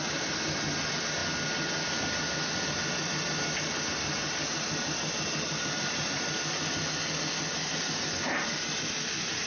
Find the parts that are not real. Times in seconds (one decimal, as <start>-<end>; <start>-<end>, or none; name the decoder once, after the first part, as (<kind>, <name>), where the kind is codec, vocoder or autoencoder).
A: none